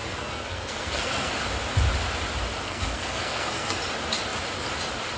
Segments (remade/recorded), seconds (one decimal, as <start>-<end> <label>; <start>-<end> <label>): 0.0-1.3 remade; 1.3-2.6 recorded; 2.6-3.8 remade; 3.8-5.2 recorded